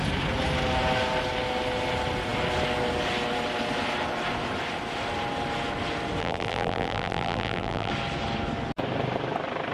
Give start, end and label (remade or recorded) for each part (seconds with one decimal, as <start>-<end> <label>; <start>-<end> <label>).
0.0-6.2 recorded; 6.2-7.9 remade; 7.9-9.7 recorded